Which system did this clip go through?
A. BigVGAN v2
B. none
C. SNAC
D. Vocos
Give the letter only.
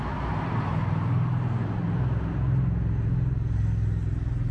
B